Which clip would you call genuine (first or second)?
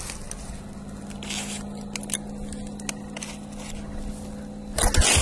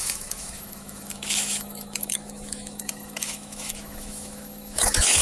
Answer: first